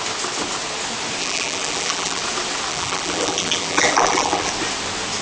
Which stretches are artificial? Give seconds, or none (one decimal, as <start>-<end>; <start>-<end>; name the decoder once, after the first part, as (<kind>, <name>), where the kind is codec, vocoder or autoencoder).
1.2-2.2 (vocoder, BigVGAN v2); 2.7-4.5